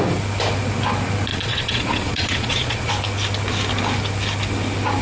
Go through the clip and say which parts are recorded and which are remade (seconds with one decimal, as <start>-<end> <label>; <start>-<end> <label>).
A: 0.0-1.3 recorded; 1.3-2.9 remade; 2.9-5.0 recorded